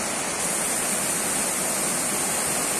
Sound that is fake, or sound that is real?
real